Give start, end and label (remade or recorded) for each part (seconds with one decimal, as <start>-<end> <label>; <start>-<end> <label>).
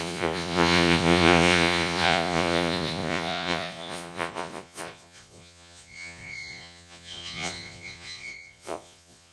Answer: 0.0-9.3 remade